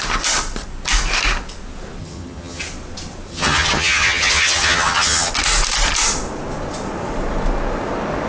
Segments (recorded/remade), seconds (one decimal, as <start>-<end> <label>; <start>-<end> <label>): 0.0-2.0 recorded; 2.0-2.6 remade; 2.6-3.3 recorded; 3.3-5.3 remade; 5.3-8.3 recorded